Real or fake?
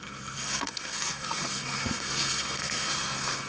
fake